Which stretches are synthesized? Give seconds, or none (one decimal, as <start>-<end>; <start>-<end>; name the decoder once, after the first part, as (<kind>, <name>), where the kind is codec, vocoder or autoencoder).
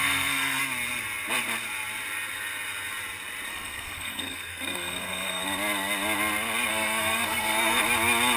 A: 0.0-0.6 (codec, SNAC); 3.5-5.4; 6.7-7.8